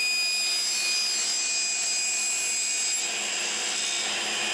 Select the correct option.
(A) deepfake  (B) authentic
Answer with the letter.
B